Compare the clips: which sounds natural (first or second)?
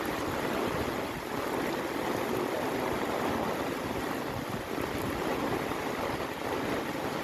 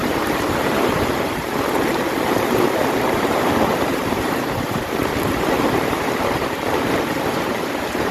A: first